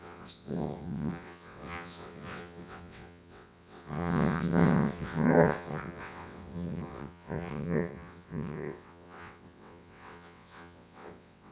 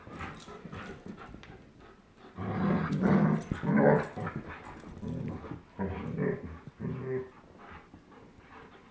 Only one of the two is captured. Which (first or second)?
second